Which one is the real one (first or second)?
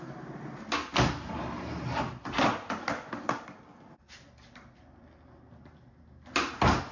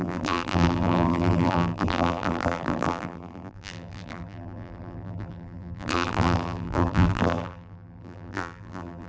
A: first